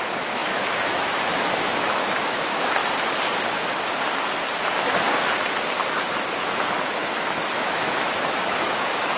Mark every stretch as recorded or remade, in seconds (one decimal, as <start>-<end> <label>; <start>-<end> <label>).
0.0-2.8 remade; 2.8-7.0 recorded; 7.0-9.2 remade